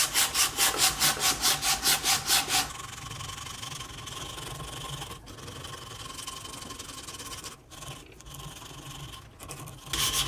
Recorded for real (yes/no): yes